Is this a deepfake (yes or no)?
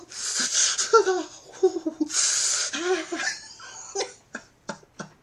no